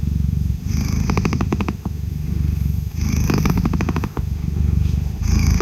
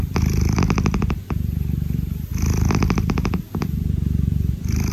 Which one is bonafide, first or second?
second